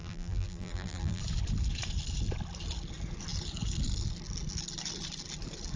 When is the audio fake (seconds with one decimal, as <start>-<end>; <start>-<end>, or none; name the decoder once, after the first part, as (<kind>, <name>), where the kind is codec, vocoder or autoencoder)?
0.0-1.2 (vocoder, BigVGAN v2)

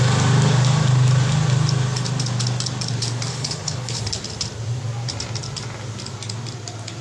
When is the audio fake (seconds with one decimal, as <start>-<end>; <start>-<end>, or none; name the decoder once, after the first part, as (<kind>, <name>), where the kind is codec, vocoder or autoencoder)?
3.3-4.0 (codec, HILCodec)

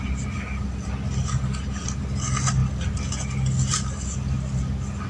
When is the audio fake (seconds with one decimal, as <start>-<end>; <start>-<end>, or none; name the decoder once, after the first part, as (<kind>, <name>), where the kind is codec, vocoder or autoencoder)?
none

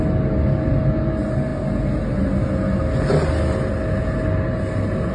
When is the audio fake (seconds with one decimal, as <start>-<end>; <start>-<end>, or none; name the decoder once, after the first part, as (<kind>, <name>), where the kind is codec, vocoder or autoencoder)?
none

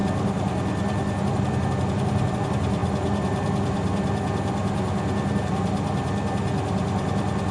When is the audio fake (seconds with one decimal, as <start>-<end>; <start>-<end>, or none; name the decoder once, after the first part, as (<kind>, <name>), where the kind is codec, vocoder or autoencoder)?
none